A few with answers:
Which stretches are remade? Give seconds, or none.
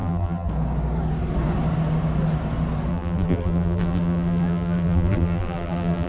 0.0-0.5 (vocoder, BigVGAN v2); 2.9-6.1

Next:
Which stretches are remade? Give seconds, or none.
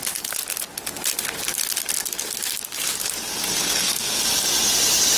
3.5-4.2 (codec, SNAC)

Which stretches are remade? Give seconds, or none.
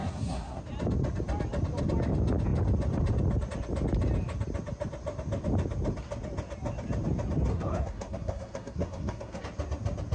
0.0-0.6 (codec, SNAC); 7.5-9.4